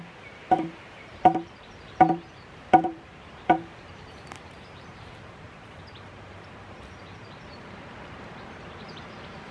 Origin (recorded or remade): remade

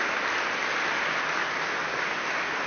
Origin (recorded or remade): recorded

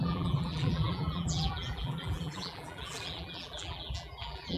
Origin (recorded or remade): remade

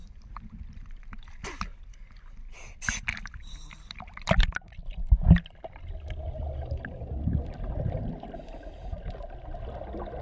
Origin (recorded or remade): recorded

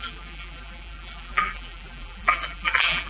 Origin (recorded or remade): remade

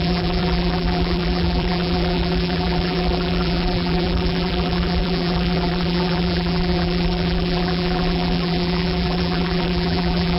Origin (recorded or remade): remade